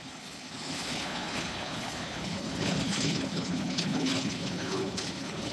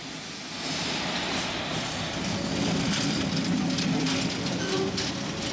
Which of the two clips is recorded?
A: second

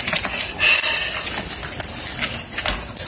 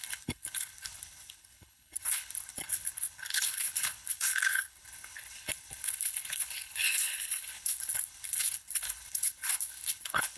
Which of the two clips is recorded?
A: first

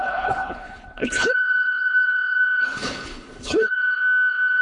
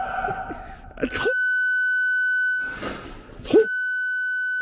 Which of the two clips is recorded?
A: second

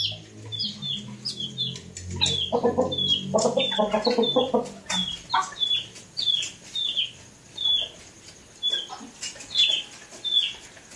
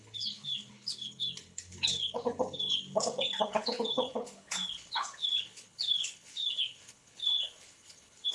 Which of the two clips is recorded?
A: first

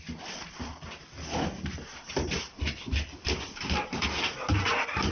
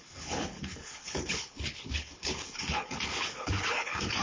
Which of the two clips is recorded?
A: first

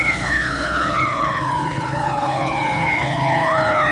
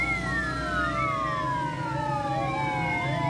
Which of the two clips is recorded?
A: second